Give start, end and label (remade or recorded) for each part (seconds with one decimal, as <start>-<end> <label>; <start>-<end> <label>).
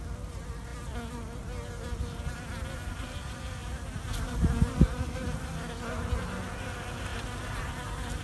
0.0-8.2 recorded